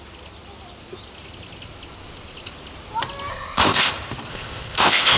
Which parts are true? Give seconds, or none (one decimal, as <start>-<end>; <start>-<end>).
0.0-3.3; 3.9-4.3